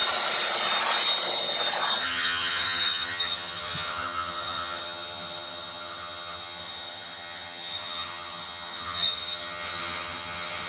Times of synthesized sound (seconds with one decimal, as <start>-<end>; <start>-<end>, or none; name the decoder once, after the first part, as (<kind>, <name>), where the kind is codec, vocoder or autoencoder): 2.0-10.7 (vocoder, HiFi-GAN)